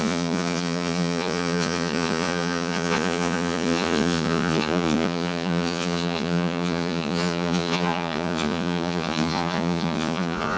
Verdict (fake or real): fake